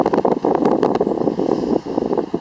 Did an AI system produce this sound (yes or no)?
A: no